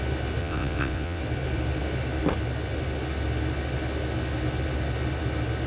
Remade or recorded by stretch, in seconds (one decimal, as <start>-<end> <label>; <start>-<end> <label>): 0.0-0.4 recorded; 0.4-1.2 remade; 1.2-5.7 recorded